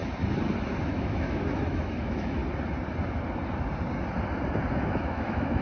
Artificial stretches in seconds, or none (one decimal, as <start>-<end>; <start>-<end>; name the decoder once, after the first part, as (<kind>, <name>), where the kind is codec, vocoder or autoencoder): 0.8-2.4 (autoencoder, DAC-VAE); 4.7-5.6